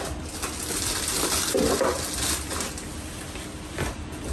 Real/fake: real